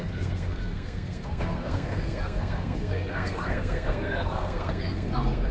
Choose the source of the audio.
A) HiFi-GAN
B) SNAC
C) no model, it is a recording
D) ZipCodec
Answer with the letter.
B